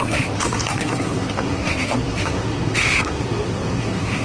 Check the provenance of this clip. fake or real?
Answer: fake